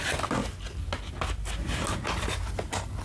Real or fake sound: real